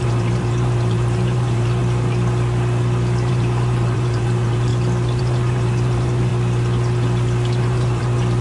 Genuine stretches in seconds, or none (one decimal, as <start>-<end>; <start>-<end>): 1.8-3.3; 4.7-5.2; 6.3-7.6

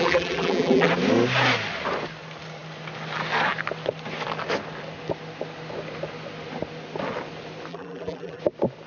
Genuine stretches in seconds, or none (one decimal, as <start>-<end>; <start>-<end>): 0.9-7.7; 8.4-8.9

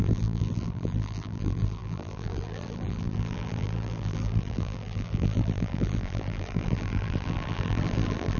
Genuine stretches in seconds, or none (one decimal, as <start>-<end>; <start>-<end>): none

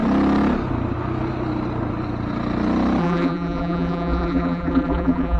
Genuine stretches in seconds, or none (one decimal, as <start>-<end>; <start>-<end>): 0.0-3.0